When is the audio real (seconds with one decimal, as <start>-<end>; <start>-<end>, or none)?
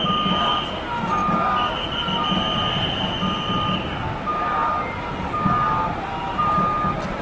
0.0-7.2